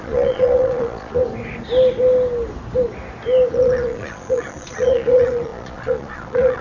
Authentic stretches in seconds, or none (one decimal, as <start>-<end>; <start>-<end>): 1.2-3.5